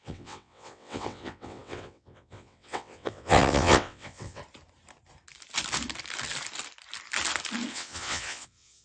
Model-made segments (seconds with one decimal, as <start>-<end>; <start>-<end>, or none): 0.0-4.4; 7.7-8.8